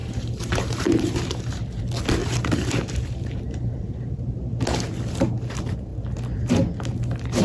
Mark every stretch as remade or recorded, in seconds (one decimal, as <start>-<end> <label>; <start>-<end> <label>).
0.0-1.8 remade; 1.8-2.2 recorded; 2.2-4.5 remade; 4.5-7.4 recorded